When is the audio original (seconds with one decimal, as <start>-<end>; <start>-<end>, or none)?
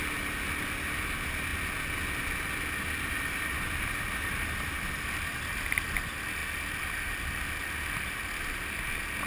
0.0-9.3